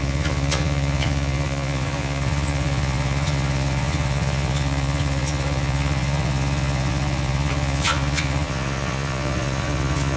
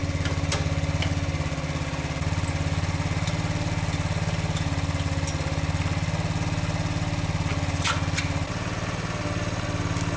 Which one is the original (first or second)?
second